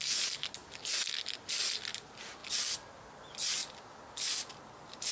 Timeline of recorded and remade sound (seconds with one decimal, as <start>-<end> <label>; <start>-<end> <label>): 0.0-5.1 recorded